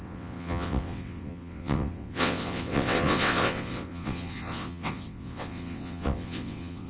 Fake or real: fake